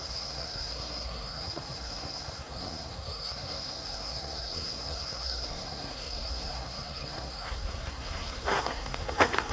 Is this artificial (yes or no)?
yes